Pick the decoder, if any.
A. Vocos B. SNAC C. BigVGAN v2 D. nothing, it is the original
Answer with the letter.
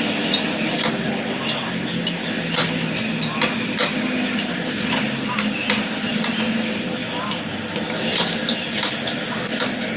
C